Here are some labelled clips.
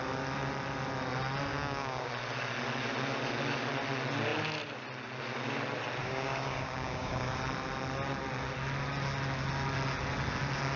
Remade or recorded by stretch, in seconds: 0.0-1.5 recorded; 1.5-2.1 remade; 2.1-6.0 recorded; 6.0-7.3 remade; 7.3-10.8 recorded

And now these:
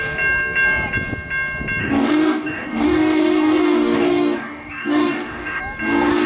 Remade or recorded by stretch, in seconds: 0.0-1.8 recorded; 1.8-5.6 remade; 5.6-6.3 recorded

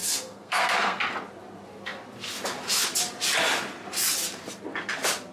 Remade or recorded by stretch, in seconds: 0.0-1.0 remade; 1.0-5.3 recorded